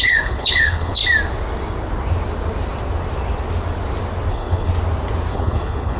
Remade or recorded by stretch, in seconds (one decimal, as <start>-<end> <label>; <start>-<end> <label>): 0.0-1.0 remade; 1.0-4.3 recorded; 4.3-4.7 remade; 4.7-5.3 recorded; 5.3-6.0 remade